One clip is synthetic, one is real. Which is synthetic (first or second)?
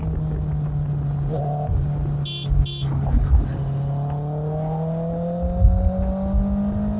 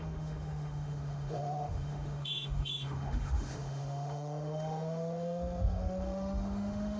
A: second